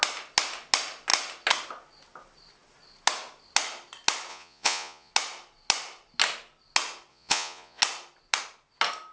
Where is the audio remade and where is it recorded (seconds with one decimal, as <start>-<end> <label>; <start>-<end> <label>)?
0.0-4.3 recorded; 4.3-5.1 remade; 5.1-7.1 recorded; 7.1-7.8 remade; 7.8-9.1 recorded